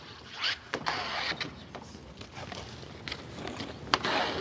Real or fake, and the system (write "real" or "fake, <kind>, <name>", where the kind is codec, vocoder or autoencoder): real